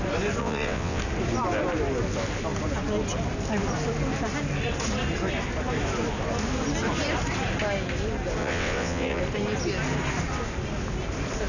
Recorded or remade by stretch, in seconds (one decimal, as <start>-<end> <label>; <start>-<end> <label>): 0.0-0.4 recorded; 0.4-1.0 remade; 1.0-8.4 recorded; 8.4-9.2 remade; 9.2-11.5 recorded